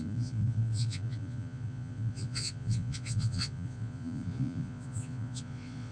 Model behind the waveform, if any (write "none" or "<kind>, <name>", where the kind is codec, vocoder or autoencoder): vocoder, Vocos